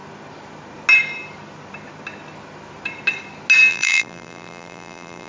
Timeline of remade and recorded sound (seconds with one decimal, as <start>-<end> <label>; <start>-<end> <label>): 0.0-3.7 recorded; 3.7-5.3 remade